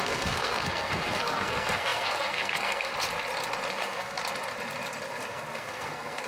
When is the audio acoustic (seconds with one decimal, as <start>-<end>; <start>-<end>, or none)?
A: 2.9-3.7; 4.2-5.3